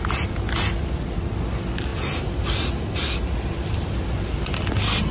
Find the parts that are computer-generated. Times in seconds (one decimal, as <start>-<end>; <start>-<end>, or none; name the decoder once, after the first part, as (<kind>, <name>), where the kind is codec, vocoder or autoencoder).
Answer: none